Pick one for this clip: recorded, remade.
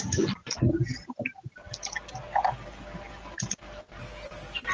recorded